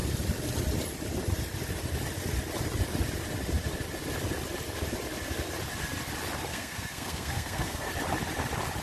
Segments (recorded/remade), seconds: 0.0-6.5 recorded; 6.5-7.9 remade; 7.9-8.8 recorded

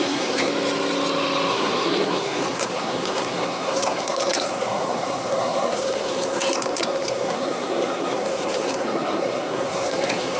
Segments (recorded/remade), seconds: 0.0-0.5 remade; 0.5-1.5 recorded; 1.5-10.4 remade

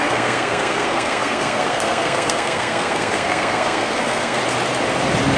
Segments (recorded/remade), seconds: 0.0-4.4 remade; 4.4-5.4 recorded

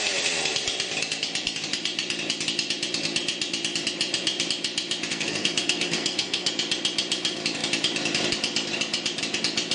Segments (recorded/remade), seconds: 0.0-5.1 recorded; 5.1-6.5 remade; 6.5-9.7 recorded

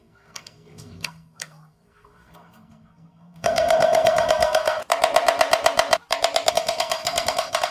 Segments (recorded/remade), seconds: 0.0-4.8 remade; 4.8-6.5 recorded; 6.5-7.7 remade

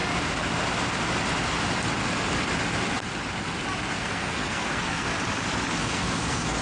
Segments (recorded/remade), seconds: 0.0-3.9 recorded; 3.9-5.1 remade; 5.1-5.8 recorded; 5.8-6.6 remade